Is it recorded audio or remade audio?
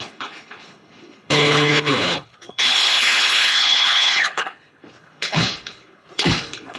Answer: remade